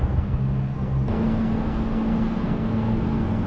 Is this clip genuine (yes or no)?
no